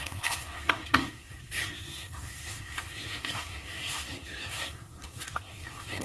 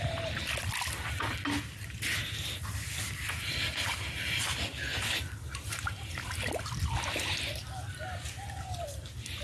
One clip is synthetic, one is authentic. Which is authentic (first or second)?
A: second